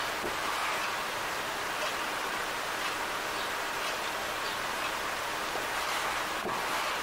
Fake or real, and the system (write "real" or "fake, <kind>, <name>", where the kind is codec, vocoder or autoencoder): real